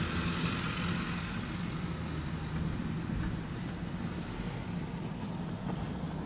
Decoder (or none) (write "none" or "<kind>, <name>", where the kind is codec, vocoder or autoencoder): none